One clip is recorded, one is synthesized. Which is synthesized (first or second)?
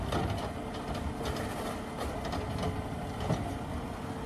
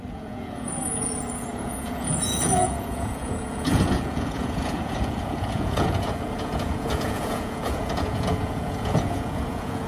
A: second